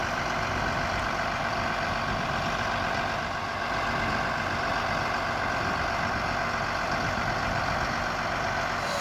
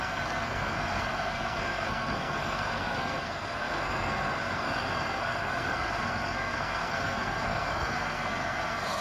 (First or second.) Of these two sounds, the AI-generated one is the second